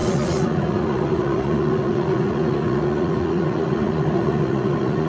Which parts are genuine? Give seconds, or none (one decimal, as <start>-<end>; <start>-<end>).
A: none